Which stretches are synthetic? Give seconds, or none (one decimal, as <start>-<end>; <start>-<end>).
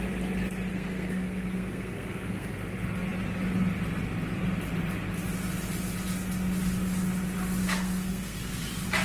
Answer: 0.7-2.5; 7.6-8.5